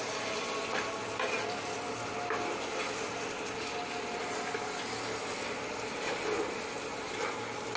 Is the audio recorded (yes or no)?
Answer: yes